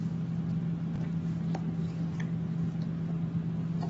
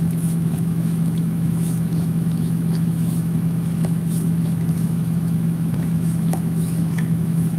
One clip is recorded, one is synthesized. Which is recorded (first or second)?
first